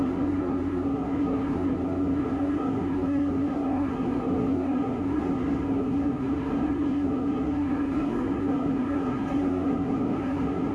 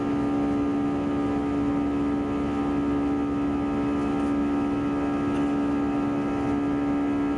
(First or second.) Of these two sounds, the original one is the second